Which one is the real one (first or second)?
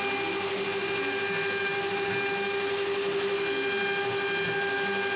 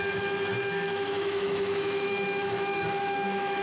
first